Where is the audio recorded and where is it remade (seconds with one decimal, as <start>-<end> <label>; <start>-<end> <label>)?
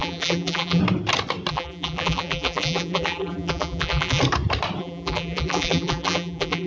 0.0-0.8 remade; 0.8-1.5 recorded; 1.5-4.2 remade; 4.2-4.8 recorded; 4.8-6.7 remade